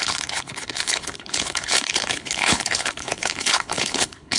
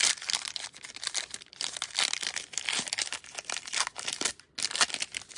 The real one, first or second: second